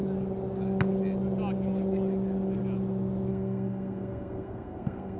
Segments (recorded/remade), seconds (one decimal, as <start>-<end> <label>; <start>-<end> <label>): 0.0-3.3 recorded; 3.3-5.2 remade